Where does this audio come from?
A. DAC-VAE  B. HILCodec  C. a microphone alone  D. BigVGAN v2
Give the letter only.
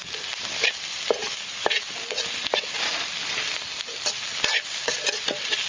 C